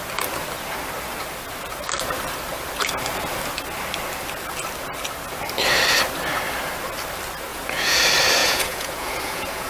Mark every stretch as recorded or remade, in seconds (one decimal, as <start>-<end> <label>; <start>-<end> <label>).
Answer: 0.0-7.5 recorded; 7.5-8.0 remade; 8.0-8.4 recorded; 8.4-9.7 remade